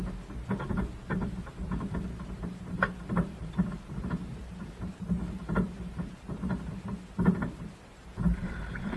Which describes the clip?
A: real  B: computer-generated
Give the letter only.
B